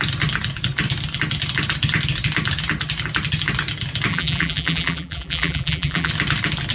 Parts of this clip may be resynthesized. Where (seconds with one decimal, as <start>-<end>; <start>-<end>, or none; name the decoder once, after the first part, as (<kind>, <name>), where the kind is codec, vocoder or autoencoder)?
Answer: 4.1-6.1 (vocoder, BigVGAN v2)